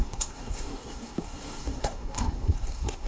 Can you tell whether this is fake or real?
fake